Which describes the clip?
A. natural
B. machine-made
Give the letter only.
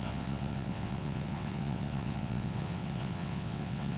B